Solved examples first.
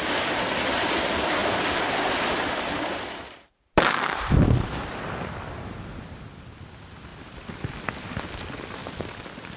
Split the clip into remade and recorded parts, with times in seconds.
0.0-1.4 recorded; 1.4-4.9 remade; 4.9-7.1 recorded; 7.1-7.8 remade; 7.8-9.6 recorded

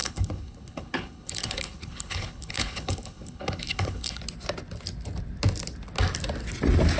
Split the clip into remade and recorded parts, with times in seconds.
0.0-4.2 remade; 4.2-7.0 recorded

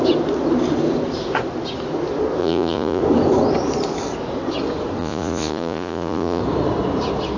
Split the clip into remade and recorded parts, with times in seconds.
0.0-2.4 recorded; 2.4-3.0 remade; 3.0-5.0 recorded; 5.0-6.4 remade; 6.4-7.4 recorded

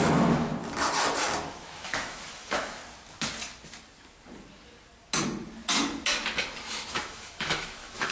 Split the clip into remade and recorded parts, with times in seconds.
0.0-0.5 remade; 0.5-1.5 recorded; 1.5-2.8 remade; 2.8-6.6 recorded; 6.6-8.1 remade

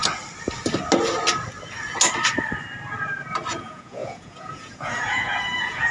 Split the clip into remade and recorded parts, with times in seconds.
0.0-3.5 recorded; 3.5-5.9 remade